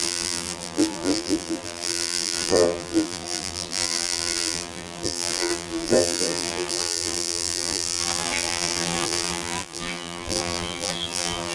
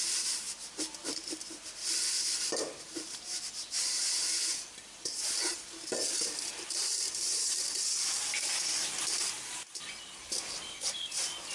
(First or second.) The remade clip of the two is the first